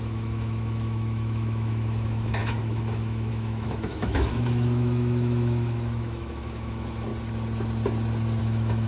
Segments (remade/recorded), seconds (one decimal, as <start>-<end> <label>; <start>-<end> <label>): 0.0-7.1 remade; 7.1-8.4 recorded; 8.4-8.9 remade